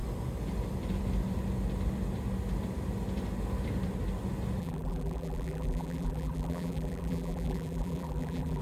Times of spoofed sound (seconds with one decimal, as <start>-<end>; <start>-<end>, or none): 4.6-8.6